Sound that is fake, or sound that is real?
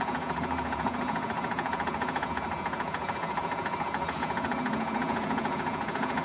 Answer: fake